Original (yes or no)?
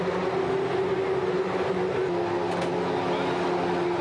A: yes